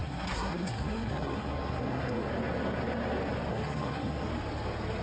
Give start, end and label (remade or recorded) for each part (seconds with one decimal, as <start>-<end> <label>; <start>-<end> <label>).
0.0-2.3 remade; 2.3-3.5 recorded; 3.5-4.3 remade; 4.3-5.0 recorded